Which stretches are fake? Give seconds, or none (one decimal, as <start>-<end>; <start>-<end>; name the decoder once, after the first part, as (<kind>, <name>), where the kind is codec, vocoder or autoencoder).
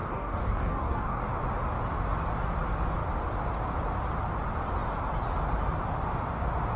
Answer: 0.0-1.2 (codec, DAC)